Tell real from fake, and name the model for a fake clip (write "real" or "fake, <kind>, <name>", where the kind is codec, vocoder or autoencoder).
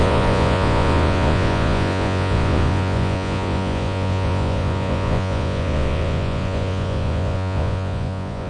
fake, vocoder, Vocos